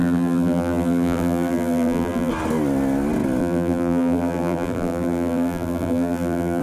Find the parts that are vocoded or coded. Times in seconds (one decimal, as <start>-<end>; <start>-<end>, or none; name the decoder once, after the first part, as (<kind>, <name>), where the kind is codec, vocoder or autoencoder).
0.0-2.3 (vocoder, BigVGAN v2); 3.4-6.6